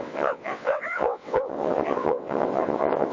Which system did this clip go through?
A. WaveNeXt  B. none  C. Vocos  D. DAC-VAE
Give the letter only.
A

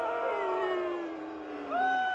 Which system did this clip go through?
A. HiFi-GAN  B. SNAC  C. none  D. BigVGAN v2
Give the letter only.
D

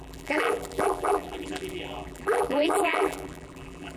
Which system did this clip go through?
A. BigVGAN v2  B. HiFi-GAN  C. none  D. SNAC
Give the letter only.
A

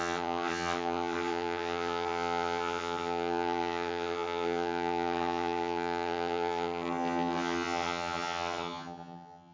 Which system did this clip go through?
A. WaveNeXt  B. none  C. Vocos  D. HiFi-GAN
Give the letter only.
D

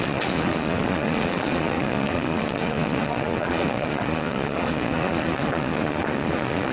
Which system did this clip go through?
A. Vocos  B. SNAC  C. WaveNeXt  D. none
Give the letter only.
A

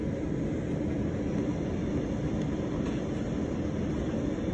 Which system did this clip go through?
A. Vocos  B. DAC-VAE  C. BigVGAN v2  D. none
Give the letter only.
D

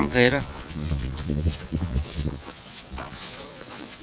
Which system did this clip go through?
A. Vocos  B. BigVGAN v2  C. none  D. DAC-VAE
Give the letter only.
A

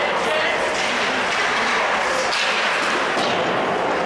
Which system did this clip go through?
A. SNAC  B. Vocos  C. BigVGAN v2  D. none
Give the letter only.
D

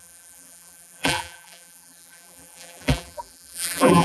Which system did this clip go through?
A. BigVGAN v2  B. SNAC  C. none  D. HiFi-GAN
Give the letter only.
A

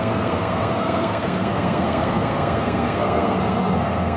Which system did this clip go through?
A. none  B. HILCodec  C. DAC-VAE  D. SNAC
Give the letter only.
D